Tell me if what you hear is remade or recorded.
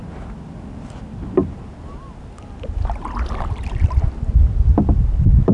recorded